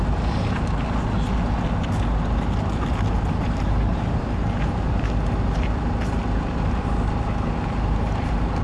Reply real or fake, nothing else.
real